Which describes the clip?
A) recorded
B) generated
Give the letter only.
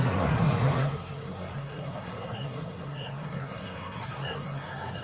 B